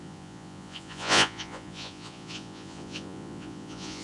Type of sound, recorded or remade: remade